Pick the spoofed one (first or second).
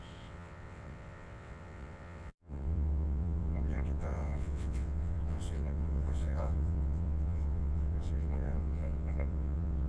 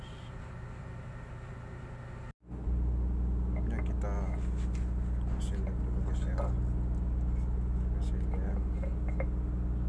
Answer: first